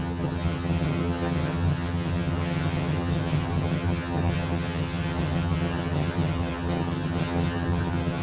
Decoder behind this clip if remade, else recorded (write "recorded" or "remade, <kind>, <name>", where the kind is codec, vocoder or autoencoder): remade, vocoder, HiFi-GAN